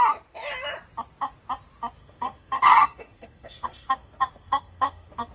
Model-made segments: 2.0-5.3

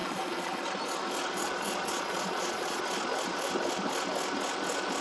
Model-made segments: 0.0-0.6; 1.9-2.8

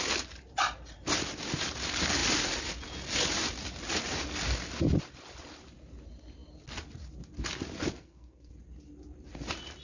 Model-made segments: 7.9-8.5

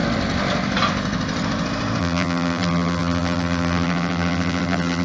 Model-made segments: 2.0-5.0